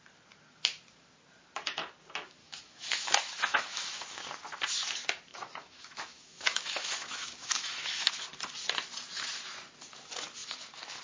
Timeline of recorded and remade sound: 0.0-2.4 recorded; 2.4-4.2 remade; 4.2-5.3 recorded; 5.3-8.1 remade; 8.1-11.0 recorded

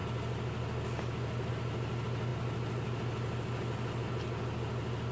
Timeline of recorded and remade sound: 0.0-5.1 recorded

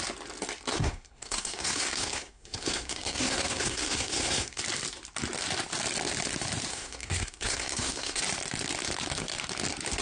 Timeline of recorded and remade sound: 0.0-0.7 recorded; 0.7-4.6 remade; 4.6-6.7 recorded; 6.7-8.2 remade; 8.2-10.0 recorded